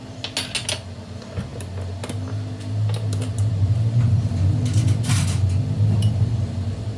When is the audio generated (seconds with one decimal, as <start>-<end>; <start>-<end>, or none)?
none